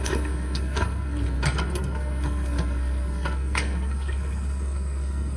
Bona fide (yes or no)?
no